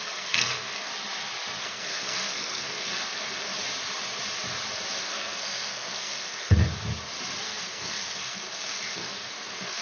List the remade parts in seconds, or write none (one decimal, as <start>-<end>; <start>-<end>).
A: 0.0-0.9; 1.6-3.5; 5.0-6.6; 7.4-9.8